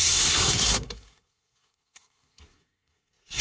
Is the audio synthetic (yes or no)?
yes